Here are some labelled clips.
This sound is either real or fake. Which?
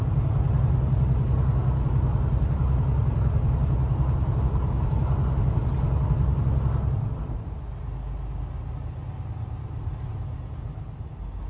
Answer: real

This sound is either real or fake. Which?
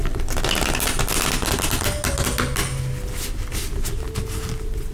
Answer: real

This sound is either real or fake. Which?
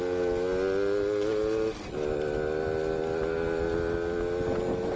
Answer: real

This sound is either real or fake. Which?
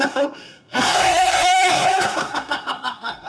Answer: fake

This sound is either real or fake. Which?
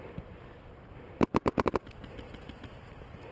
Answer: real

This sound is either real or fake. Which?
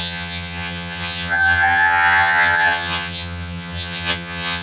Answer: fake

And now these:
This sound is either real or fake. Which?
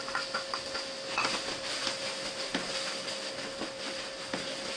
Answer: real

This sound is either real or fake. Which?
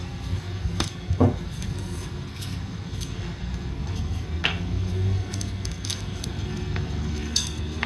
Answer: fake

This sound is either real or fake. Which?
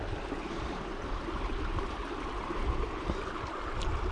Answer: real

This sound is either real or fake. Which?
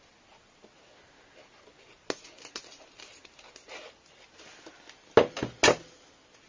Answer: real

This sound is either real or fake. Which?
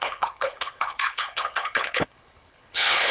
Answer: fake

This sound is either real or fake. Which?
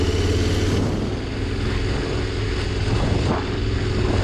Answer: real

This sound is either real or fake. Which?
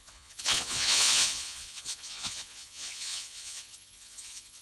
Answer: fake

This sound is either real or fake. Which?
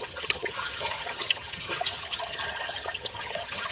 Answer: fake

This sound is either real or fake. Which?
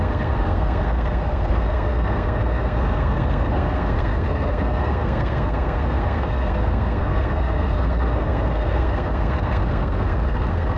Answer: fake